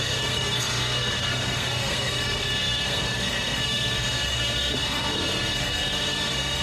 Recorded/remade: remade